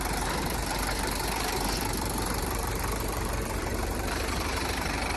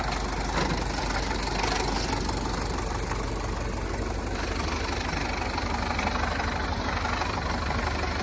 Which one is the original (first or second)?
second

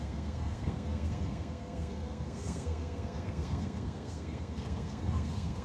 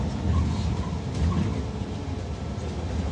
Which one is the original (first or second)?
second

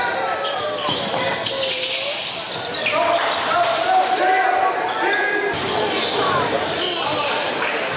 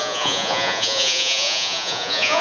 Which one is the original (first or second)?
first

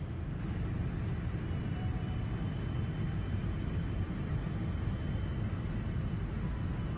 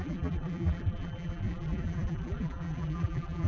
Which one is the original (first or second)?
first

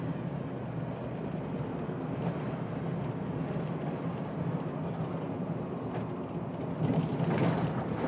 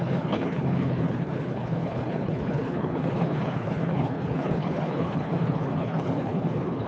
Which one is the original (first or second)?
first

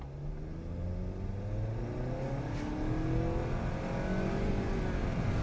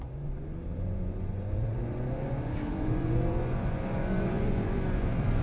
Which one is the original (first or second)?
first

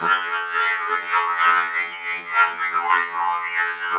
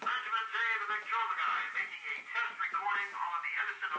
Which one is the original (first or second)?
second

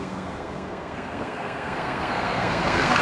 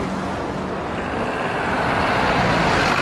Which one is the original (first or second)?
second